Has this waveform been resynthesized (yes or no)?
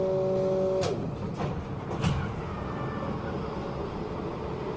no